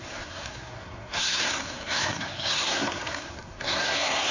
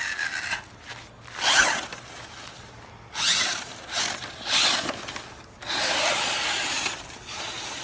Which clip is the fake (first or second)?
first